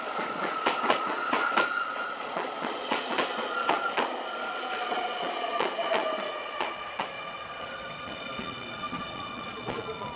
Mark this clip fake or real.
fake